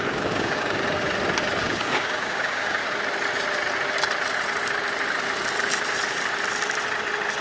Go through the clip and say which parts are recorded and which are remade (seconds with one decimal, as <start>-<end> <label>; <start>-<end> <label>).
0.0-0.8 remade; 0.8-1.6 recorded; 1.6-2.8 remade; 2.8-7.4 recorded